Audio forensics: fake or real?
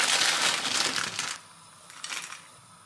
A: real